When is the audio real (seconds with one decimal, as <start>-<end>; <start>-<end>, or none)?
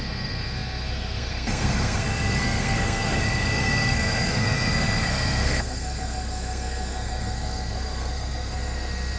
none